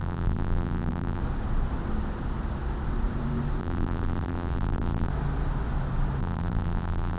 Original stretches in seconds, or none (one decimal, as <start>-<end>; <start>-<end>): 1.2-3.6; 5.1-6.2